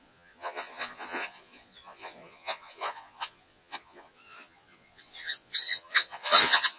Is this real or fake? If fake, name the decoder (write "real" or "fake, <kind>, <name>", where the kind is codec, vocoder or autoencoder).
fake, vocoder, Vocos